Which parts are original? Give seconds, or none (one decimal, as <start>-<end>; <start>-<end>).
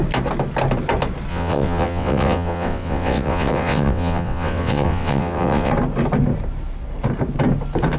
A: 0.0-1.3; 5.7-8.0